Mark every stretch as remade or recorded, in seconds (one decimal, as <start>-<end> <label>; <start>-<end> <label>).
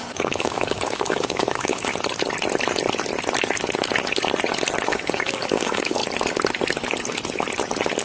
0.0-1.9 remade; 1.9-4.9 recorded; 4.9-6.0 remade; 6.0-8.0 recorded